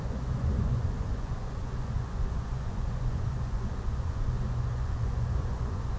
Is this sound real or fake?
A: fake